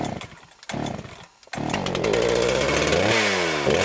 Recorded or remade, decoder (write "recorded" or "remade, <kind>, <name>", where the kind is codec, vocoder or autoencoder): recorded